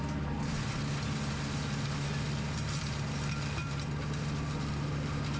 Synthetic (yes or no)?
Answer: no